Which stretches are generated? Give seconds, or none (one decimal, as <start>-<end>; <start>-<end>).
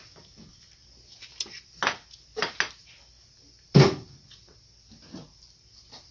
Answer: none